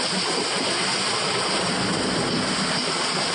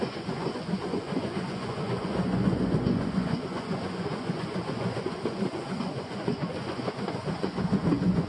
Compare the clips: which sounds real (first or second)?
first